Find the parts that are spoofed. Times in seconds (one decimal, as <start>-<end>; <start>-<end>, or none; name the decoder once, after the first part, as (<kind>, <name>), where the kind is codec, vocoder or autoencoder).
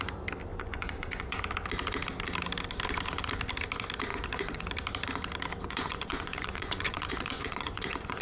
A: 0.5-1.4 (vocoder, Vocos); 4.1-4.6; 5.6-8.2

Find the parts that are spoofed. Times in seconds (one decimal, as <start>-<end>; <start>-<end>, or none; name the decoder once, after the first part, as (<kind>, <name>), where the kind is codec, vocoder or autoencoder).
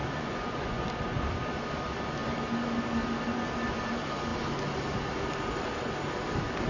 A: 0.0-0.9 (vocoder, Vocos)